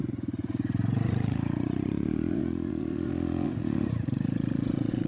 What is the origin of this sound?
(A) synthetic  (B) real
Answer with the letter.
A